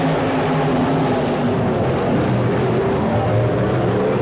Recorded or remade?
recorded